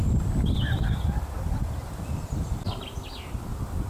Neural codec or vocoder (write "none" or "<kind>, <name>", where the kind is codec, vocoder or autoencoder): none